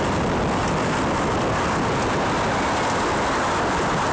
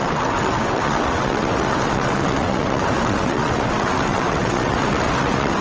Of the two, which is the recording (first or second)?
first